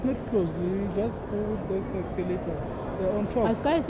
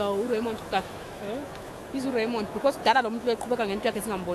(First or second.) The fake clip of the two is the second